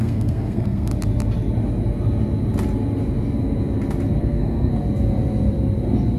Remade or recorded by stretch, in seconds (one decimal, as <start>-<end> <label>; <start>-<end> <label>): 0.0-0.9 remade; 0.9-4.2 recorded; 4.2-4.7 remade; 4.7-6.2 recorded